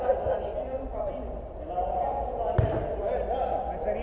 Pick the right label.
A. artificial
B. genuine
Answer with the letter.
B